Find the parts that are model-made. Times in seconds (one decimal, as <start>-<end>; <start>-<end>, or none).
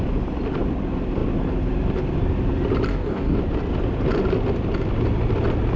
2.9-3.4